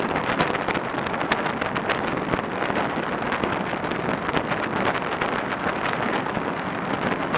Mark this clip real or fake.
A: real